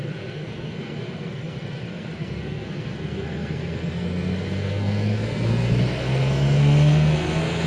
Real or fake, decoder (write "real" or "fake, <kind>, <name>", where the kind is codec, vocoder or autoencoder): fake, codec, SNAC